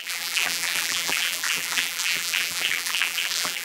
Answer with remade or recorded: remade